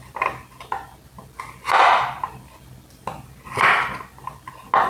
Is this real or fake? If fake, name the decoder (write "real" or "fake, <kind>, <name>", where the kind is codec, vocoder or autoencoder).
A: fake, vocoder, BigVGAN v2